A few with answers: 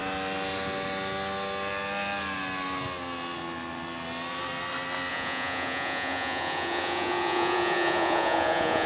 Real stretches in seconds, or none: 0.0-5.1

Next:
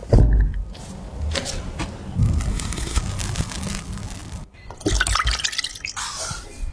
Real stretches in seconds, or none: 0.0-2.5; 3.0-6.7